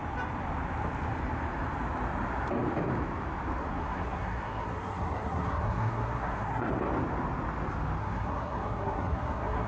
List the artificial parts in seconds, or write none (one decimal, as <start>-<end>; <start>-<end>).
3.6-6.7; 8.0-9.7

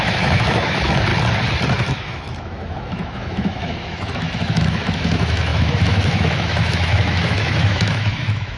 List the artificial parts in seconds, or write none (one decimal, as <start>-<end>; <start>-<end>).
0.0-1.1; 1.9-8.6

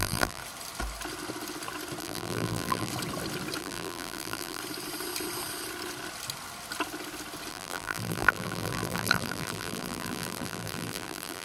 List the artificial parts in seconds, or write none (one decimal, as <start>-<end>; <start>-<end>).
0.0-0.4; 2.0-2.9; 3.6-4.6; 7.5-11.4